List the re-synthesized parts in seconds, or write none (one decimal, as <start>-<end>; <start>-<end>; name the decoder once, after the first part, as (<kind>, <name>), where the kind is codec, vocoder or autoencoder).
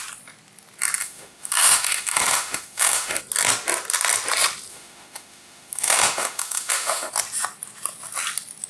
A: 1.0-3.2 (autoencoder, DAC-VAE); 4.7-7.1